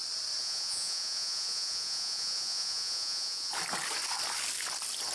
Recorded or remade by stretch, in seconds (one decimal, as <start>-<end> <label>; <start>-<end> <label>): 0.0-0.4 recorded; 0.4-3.5 remade; 3.5-5.1 recorded